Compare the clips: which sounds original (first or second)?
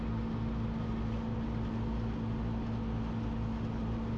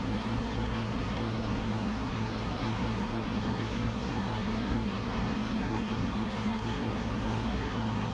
first